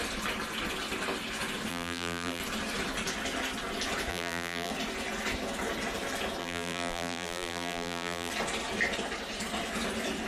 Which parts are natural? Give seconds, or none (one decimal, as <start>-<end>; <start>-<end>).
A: 0.0-1.7; 2.4-4.1; 4.7-6.4; 8.3-10.3